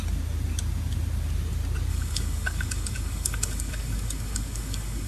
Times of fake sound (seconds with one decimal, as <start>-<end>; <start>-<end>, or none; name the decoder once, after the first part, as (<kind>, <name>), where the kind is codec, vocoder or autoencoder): 1.9-5.1 (codec, DAC)